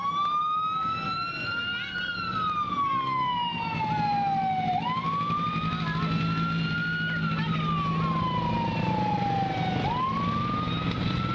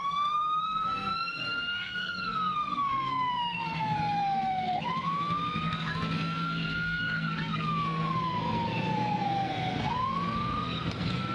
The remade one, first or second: second